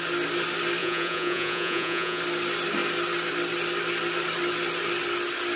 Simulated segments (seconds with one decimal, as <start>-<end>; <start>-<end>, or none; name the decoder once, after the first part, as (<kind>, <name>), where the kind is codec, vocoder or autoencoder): 0.8-2.2 (vocoder, Vocos)